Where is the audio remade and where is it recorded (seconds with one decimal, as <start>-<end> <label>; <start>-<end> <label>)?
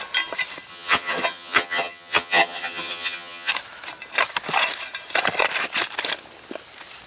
0.0-0.7 recorded; 0.7-3.5 remade; 3.5-7.1 recorded